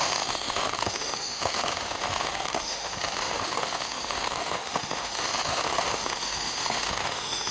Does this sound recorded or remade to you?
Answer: remade